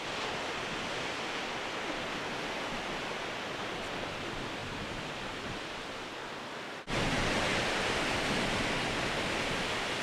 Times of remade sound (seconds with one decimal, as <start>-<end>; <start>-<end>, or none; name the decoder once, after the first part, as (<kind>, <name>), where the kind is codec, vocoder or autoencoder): none